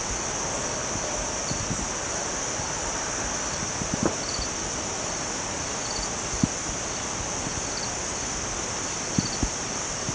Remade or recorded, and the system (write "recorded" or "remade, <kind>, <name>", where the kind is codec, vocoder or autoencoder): recorded